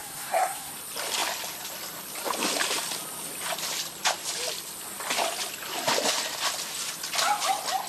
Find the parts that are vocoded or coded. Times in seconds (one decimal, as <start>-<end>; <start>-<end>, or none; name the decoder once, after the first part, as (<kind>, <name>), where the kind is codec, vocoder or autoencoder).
0.0-0.7 (codec, SNAC)